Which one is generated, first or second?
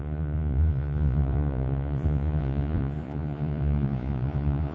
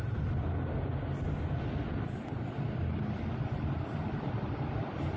first